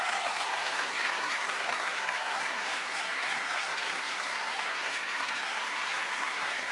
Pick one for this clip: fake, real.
fake